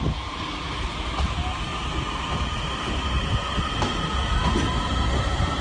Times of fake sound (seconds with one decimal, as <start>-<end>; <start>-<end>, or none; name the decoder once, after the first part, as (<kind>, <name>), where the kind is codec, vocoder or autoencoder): none